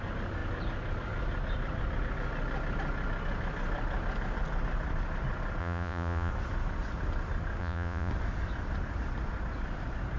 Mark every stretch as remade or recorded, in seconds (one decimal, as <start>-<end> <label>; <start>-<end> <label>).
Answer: 0.0-5.6 recorded; 5.6-6.3 remade; 6.3-7.6 recorded; 7.6-8.1 remade; 8.1-10.2 recorded